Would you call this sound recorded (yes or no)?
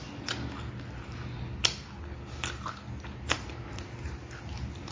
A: yes